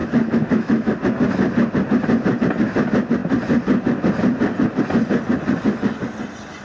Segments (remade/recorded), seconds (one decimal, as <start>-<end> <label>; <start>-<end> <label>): 0.0-0.9 remade; 0.9-6.6 recorded